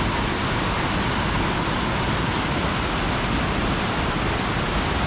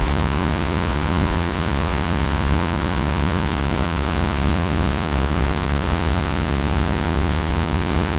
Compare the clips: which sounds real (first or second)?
first